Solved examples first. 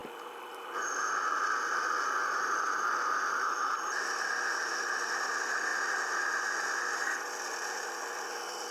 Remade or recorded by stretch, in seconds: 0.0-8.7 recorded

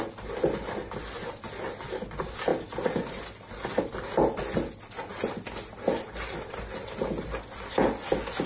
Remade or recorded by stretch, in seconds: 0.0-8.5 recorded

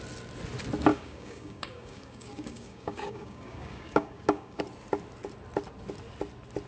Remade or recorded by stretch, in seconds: 0.0-0.9 recorded; 0.9-4.6 remade; 4.6-6.7 recorded

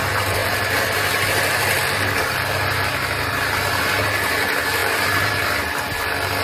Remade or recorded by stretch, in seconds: 0.0-6.4 recorded

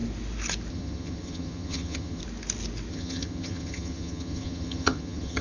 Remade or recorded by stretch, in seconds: 0.0-0.7 recorded; 0.7-2.2 remade; 2.2-2.9 recorded; 2.9-5.4 remade